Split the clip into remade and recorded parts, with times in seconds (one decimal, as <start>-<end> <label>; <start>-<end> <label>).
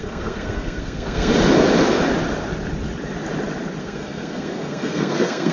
0.0-1.3 remade; 1.3-3.8 recorded; 3.8-5.5 remade